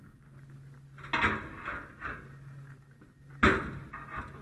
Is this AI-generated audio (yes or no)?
no